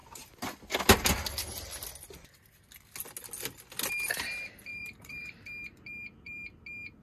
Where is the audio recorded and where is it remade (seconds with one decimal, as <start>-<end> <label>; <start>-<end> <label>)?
0.0-4.7 recorded; 4.7-5.4 remade; 5.4-7.0 recorded